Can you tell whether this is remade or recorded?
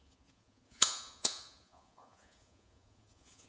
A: remade